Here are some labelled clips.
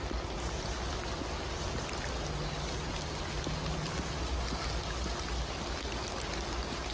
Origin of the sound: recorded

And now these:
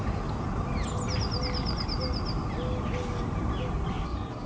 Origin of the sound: recorded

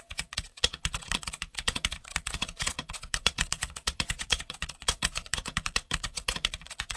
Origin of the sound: remade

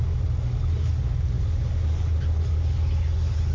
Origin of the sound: recorded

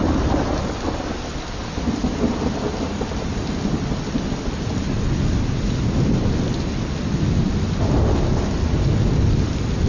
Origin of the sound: recorded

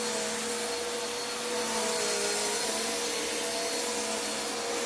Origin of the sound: recorded